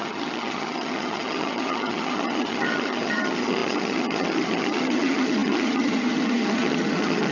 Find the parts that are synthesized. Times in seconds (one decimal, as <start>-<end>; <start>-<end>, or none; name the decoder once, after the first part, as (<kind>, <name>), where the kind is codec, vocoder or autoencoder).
0.0-7.3 (vocoder, HiFi-GAN)